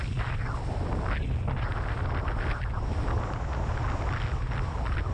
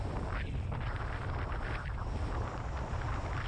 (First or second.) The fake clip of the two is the second